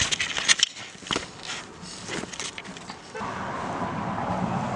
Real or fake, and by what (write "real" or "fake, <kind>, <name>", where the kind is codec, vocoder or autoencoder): real